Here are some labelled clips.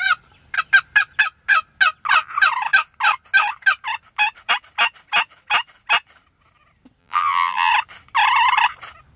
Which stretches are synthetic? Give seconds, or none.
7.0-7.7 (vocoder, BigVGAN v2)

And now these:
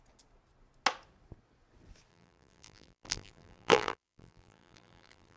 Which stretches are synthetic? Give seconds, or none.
2.1-5.4 (vocoder, BigVGAN v2)

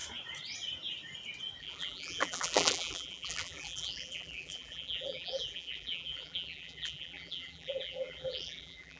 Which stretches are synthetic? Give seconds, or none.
1.6-9.0 (vocoder, BigVGAN v2)

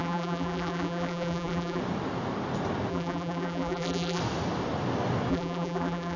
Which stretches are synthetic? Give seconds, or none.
0.0-1.8 (vocoder, BigVGAN v2); 2.9-4.2; 5.3-6.2

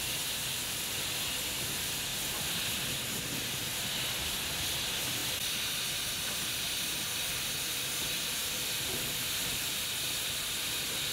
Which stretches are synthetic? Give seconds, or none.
8.4-9.6 (vocoder, BigVGAN v2)

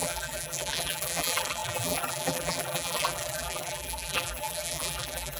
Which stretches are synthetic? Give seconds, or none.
0.0-5.4 (vocoder, BigVGAN v2)